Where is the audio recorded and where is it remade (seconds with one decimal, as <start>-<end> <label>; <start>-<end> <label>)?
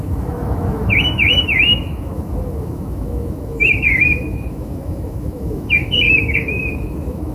0.0-7.3 remade